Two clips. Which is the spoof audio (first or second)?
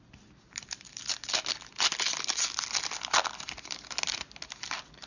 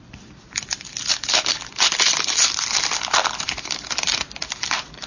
second